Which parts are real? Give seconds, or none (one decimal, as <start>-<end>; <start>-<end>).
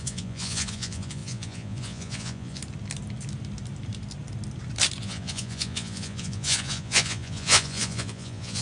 2.6-5.0